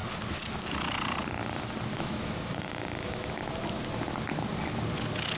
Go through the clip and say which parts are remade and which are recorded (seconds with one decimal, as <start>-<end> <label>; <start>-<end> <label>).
0.0-1.9 recorded; 1.9-3.5 remade; 3.5-5.4 recorded